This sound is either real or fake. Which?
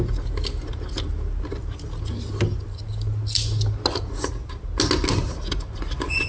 real